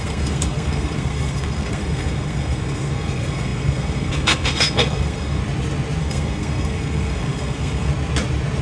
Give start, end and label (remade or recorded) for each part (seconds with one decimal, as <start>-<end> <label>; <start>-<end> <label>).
0.0-5.4 remade; 5.4-6.0 recorded; 6.0-7.9 remade; 7.9-8.6 recorded

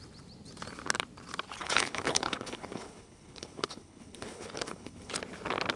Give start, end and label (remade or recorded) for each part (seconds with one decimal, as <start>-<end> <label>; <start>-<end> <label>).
0.0-1.6 recorded; 1.6-5.1 remade; 5.1-5.8 recorded

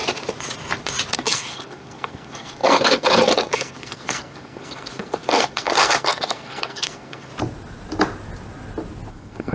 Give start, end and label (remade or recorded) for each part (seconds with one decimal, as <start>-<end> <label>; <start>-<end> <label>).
0.0-1.1 recorded; 1.1-7.3 remade; 7.3-9.1 recorded; 9.1-9.5 remade

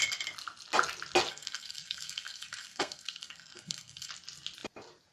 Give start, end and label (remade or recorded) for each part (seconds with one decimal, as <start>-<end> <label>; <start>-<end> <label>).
0.0-1.3 recorded; 1.3-4.1 remade; 4.1-5.1 recorded

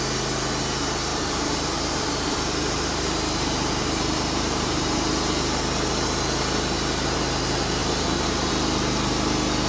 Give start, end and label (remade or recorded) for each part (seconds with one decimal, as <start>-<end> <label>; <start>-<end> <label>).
0.0-1.1 recorded; 1.1-5.0 remade; 5.0-7.8 recorded; 7.8-8.5 remade; 8.5-9.7 recorded

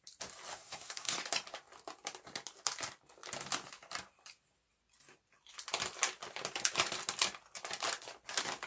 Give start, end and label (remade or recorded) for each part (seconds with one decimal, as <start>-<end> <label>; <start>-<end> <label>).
0.0-0.5 recorded; 0.5-1.2 remade; 1.2-8.7 recorded